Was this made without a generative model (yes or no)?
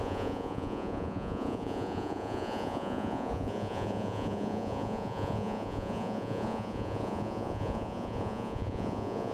no